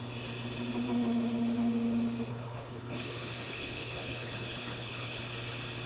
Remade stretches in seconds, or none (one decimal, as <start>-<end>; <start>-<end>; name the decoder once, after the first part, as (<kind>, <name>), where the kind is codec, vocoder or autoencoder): 2.3-5.2 (codec, HILCodec)